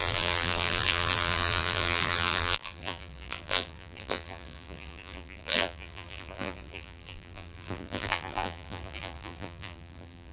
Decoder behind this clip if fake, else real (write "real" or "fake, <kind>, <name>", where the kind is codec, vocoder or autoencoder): fake, vocoder, BigVGAN v2